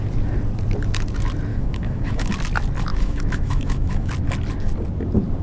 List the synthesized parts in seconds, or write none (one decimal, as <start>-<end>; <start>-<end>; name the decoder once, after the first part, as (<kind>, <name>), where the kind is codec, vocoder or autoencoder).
1.5-2.3 (autoencoder, DAC-VAE); 2.9-4.1